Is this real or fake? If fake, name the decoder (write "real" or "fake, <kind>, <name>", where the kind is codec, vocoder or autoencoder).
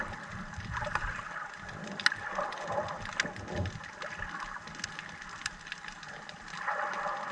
real